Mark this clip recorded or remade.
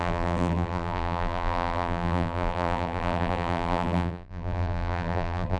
remade